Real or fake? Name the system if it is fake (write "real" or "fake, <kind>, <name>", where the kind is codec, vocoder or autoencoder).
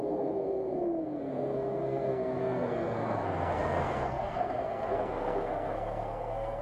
fake, codec, SNAC